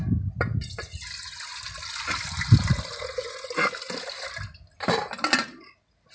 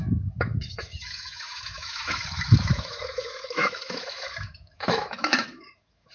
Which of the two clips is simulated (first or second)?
second